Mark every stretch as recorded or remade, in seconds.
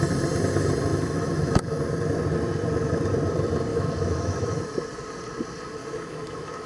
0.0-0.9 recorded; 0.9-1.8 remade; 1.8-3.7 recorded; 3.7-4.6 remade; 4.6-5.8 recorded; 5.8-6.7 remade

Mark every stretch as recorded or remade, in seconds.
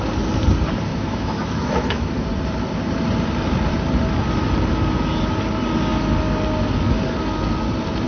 0.0-0.9 recorded; 0.9-2.1 remade; 2.1-8.1 recorded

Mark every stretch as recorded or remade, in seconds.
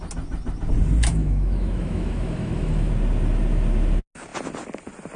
0.0-1.1 recorded; 1.1-2.9 remade; 2.9-5.2 recorded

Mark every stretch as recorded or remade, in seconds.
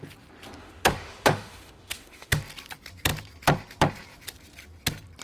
0.0-0.6 recorded; 0.6-2.4 remade; 2.4-5.2 recorded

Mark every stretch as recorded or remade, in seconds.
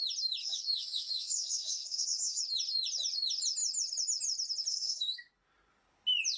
0.0-0.4 recorded; 0.4-2.4 remade; 2.4-4.7 recorded; 4.7-5.3 remade; 5.3-6.4 recorded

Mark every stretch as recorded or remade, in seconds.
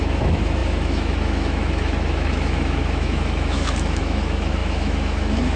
0.0-5.6 remade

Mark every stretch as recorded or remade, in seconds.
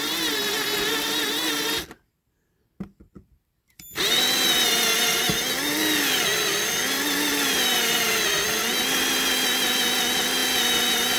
0.0-11.2 recorded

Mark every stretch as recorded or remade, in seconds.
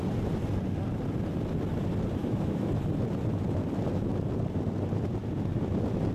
0.0-2.2 recorded; 2.2-2.7 remade; 2.7-6.1 recorded